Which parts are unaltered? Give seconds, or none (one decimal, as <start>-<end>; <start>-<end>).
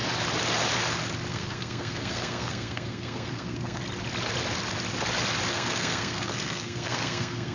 0.0-1.3; 3.8-5.5